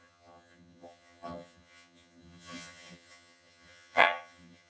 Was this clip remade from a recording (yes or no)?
yes